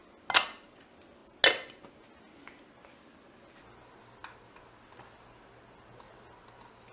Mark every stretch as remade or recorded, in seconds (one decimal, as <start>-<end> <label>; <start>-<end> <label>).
0.0-6.9 recorded